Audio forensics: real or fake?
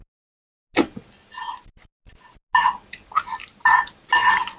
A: real